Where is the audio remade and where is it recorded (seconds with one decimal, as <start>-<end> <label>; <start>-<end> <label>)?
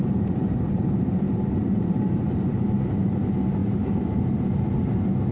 0.0-3.1 remade; 3.1-3.6 recorded; 3.6-4.5 remade; 4.5-5.3 recorded